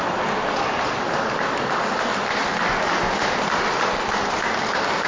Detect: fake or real real